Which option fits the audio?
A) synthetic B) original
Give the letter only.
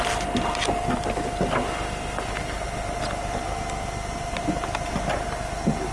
B